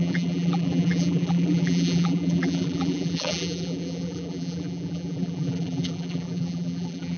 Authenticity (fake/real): fake